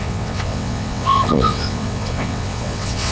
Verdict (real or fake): fake